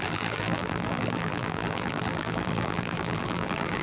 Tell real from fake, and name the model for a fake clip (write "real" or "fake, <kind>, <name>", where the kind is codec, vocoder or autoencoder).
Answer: fake, vocoder, BigVGAN v2